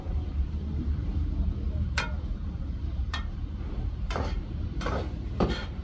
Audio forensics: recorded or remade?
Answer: remade